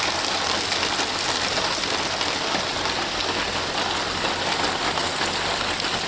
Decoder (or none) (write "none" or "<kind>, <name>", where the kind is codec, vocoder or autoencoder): none